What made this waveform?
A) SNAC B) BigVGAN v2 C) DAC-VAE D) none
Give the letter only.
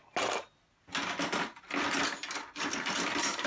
D